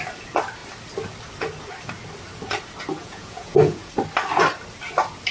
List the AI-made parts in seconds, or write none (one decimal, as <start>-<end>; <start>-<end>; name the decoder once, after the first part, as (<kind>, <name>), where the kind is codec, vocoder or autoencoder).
3.0-3.9 (vocoder, Vocos)